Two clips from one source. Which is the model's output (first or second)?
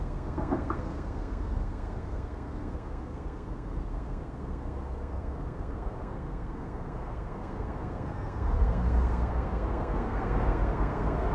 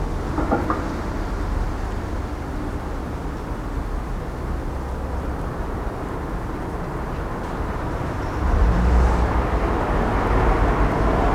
first